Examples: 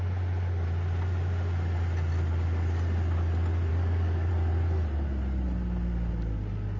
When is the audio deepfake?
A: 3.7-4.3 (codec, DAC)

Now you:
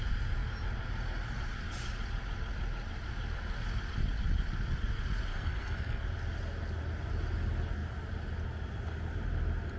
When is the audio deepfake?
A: 5.3-6.0 (codec, SNAC)

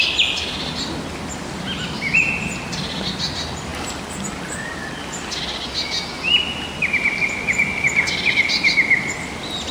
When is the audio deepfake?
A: none

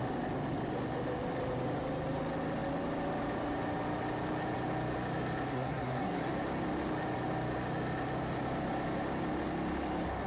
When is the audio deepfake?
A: 5.5-6.3 (codec, SNAC)

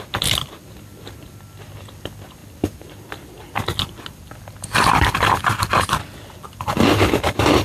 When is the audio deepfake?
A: 2.4-6.6 (vocoder, BigVGAN v2)

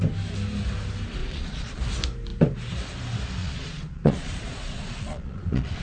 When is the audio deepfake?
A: 1.2-1.8 (vocoder, Vocos); 3.4-5.8